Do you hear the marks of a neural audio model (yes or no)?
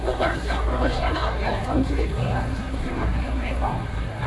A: yes